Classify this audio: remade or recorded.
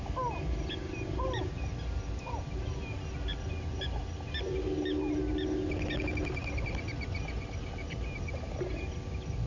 recorded